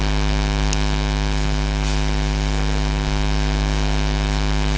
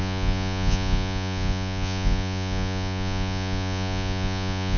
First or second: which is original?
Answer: first